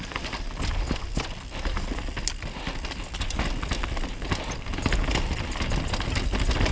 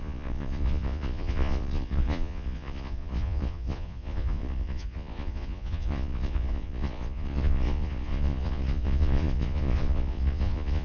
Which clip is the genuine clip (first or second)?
first